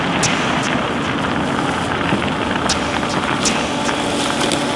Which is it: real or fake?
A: real